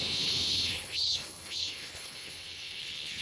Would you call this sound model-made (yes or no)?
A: yes